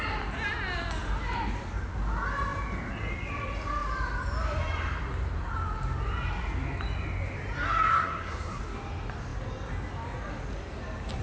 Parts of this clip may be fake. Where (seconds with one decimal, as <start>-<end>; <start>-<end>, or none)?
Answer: 7.9-8.6